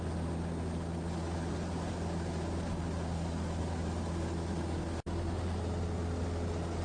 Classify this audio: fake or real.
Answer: real